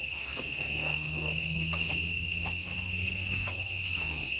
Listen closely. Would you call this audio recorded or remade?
remade